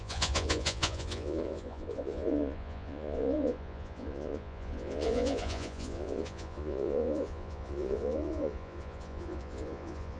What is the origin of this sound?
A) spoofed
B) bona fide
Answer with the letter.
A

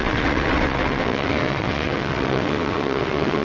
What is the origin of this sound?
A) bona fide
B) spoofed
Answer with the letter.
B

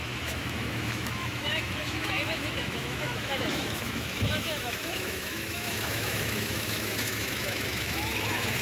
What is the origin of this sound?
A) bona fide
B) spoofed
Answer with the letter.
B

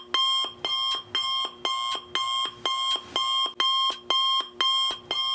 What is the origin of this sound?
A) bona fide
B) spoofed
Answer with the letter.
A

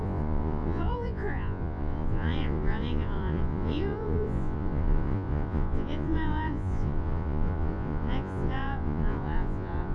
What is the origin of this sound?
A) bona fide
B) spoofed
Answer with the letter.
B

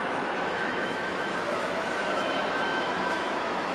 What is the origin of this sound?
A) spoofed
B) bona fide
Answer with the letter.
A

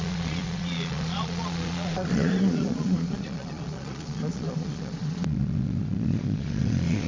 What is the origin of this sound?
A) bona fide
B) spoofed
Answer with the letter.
B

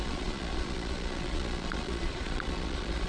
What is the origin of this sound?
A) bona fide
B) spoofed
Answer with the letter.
B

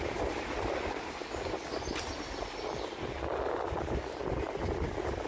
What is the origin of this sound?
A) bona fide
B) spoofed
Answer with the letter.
A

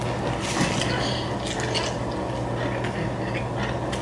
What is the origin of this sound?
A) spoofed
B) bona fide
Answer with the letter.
B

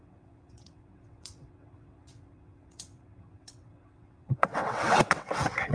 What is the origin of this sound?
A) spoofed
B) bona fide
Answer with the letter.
A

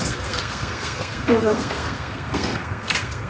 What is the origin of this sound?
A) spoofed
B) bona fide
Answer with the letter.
A